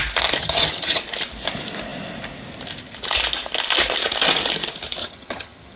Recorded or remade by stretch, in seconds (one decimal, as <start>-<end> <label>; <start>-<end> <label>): 0.0-0.4 recorded; 0.4-1.0 remade; 1.0-5.0 recorded; 5.0-5.8 remade